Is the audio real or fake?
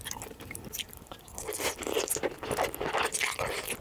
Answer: real